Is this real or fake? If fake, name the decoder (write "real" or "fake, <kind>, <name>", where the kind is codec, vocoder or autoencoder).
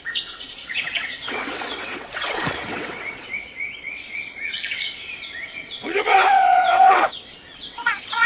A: fake, vocoder, WaveNeXt